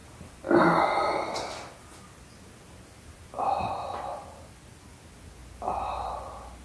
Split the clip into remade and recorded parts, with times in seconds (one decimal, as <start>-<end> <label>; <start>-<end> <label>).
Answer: 0.0-6.6 recorded